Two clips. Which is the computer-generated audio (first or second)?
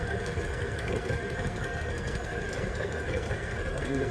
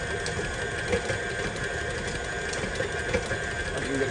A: first